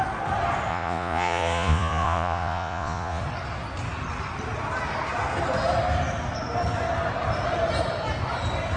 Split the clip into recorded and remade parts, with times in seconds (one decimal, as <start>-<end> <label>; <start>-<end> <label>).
0.0-0.7 recorded; 0.7-3.2 remade; 3.2-8.8 recorded